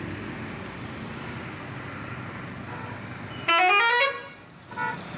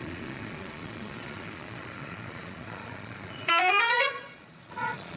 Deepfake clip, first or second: second